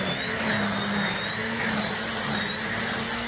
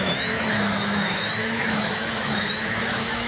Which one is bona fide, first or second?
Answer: first